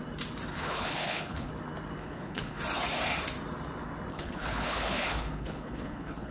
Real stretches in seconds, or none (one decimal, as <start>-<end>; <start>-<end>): 0.0-0.5; 1.5-2.0; 2.6-4.1